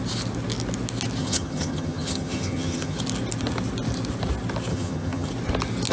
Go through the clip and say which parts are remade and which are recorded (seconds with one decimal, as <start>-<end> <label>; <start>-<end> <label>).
0.0-1.2 recorded; 1.2-3.0 remade; 3.0-4.7 recorded; 4.7-5.3 remade; 5.3-5.9 recorded